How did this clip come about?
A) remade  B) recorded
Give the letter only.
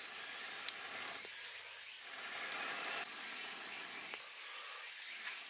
B